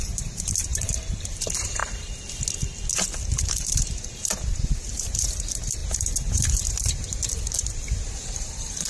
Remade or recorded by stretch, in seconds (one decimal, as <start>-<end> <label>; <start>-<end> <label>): 0.0-1.8 remade; 1.8-3.4 recorded; 3.4-8.9 remade